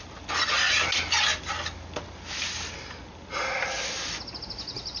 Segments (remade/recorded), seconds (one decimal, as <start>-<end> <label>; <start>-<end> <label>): 0.0-5.0 recorded